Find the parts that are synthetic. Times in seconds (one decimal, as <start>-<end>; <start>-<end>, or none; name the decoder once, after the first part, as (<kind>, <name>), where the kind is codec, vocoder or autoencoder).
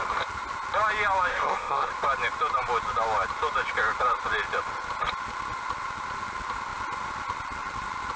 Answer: 1.3-1.9 (codec, SNAC)